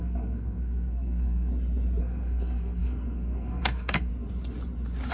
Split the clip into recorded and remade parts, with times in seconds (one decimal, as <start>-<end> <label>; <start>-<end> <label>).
0.0-1.5 remade; 1.5-2.0 recorded; 2.0-4.1 remade; 4.1-5.1 recorded